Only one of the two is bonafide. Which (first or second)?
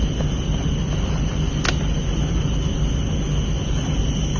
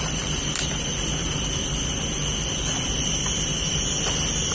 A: first